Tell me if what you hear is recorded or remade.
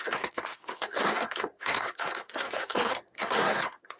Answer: remade